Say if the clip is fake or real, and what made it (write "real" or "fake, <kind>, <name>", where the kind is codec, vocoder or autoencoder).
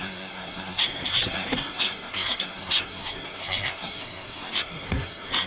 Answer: fake, codec, SNAC